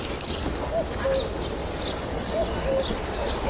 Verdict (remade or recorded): recorded